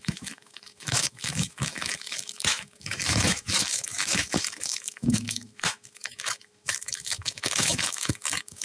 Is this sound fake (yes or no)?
yes